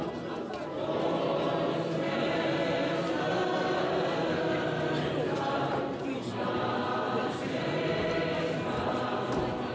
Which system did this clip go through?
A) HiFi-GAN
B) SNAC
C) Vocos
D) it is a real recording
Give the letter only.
D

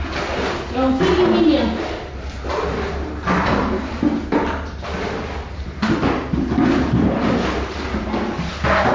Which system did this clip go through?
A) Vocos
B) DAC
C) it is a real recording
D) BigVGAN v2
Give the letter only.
C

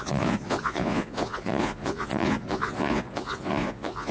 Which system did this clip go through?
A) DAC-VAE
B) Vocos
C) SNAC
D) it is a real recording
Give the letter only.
B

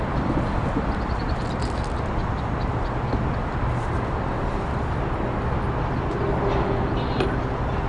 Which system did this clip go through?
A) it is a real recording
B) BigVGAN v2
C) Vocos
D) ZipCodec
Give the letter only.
A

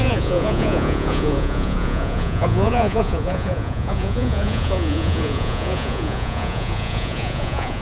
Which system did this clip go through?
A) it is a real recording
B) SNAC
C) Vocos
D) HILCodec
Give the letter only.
C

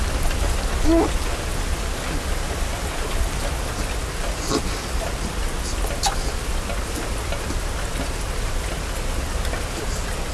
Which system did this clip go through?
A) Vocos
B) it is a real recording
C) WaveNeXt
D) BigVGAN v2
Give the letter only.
B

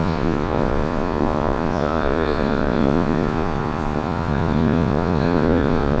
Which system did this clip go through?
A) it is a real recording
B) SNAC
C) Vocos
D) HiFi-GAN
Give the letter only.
C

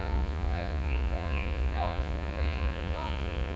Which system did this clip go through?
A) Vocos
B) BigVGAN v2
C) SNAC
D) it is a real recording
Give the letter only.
A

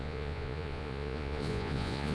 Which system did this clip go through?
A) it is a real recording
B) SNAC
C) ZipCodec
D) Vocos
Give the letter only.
D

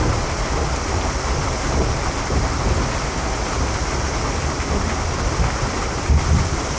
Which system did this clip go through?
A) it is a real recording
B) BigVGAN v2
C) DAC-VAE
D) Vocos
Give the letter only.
A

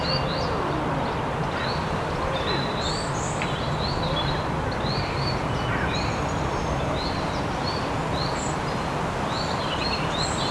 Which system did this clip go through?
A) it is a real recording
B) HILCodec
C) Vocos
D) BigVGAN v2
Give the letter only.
A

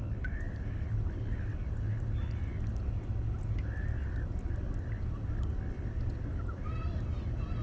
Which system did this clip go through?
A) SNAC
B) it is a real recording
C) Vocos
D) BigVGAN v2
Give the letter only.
B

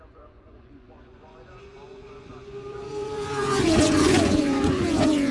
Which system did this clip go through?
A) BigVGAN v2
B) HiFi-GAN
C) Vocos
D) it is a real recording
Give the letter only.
C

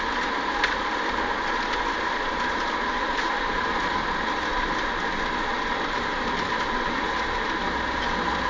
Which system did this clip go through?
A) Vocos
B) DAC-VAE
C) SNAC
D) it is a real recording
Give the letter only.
D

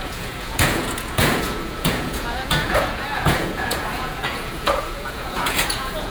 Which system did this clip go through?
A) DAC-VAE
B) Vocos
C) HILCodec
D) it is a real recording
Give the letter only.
B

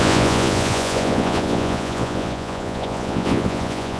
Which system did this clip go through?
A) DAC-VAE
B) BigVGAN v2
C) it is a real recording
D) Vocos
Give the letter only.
D